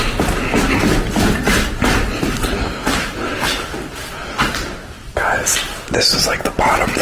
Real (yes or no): yes